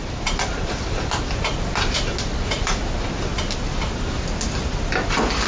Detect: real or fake real